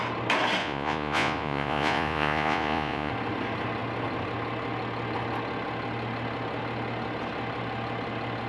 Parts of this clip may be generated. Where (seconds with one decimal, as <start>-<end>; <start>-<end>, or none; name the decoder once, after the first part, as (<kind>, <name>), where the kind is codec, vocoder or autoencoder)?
0.6-3.1 (vocoder, Vocos)